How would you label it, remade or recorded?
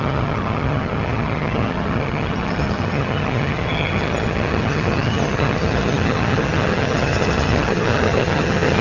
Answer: remade